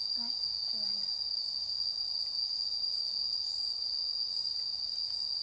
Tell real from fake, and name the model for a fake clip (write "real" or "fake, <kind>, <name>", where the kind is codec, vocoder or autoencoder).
real